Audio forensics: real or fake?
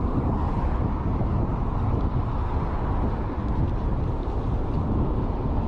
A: real